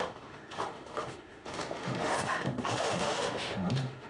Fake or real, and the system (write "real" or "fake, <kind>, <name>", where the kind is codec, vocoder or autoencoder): fake, autoencoder, DAC-VAE